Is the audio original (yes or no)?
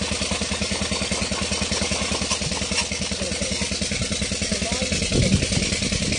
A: yes